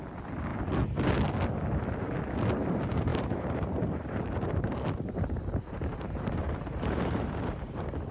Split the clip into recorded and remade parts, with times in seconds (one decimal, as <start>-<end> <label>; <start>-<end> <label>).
0.0-3.1 recorded; 3.1-8.1 remade